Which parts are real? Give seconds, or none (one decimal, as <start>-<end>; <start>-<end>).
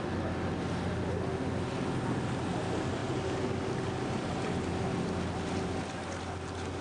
0.0-6.8